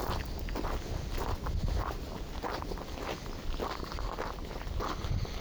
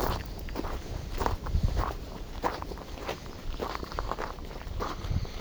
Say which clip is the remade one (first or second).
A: second